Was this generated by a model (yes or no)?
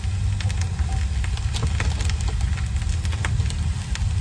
no